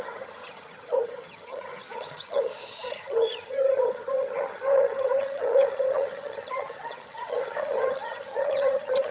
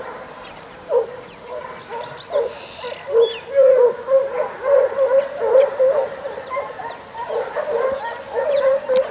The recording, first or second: second